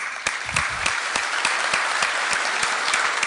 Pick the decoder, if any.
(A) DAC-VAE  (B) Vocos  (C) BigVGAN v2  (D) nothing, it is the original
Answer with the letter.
C